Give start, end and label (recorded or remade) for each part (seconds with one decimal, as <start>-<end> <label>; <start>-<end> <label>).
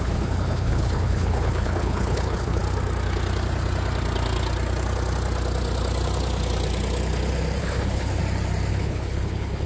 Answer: 0.0-2.6 remade; 2.6-7.6 recorded; 7.6-8.2 remade; 8.2-8.7 recorded; 8.7-9.7 remade